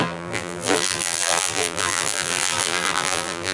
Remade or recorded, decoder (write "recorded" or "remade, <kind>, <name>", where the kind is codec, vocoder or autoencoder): remade, vocoder, BigVGAN v2